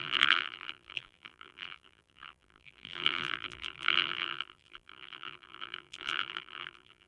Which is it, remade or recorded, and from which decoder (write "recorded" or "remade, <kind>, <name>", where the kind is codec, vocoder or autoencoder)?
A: remade, vocoder, BigVGAN v2